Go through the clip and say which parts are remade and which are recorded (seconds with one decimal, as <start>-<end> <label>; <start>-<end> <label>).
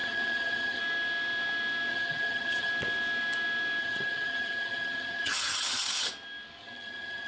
0.0-0.8 remade; 0.8-1.9 recorded; 1.9-2.7 remade; 2.7-3.8 recorded; 3.8-6.1 remade; 6.1-6.6 recorded; 6.6-7.3 remade